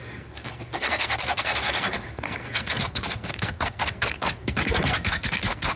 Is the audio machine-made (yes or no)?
yes